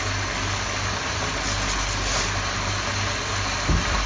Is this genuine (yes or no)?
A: yes